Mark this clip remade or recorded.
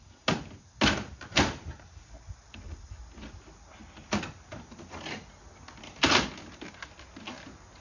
recorded